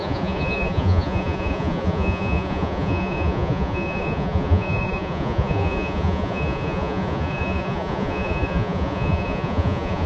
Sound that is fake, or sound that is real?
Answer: fake